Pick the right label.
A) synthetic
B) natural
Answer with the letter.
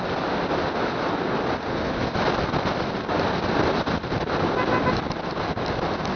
B